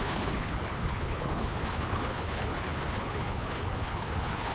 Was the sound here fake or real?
fake